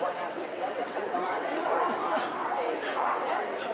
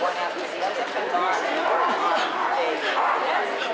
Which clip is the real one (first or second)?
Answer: second